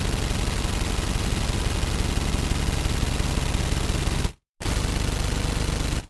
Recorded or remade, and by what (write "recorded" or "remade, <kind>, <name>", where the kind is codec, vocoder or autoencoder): recorded